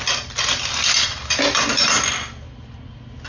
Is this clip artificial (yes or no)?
no